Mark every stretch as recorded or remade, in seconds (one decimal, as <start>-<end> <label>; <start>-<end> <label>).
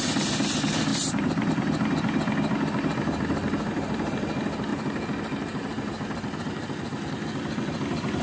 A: 0.0-0.9 recorded; 0.9-1.5 remade; 1.5-4.7 recorded; 4.7-7.1 remade; 7.1-8.2 recorded